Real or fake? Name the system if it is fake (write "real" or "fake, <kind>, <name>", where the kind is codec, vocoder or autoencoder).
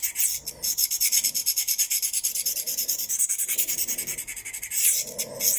real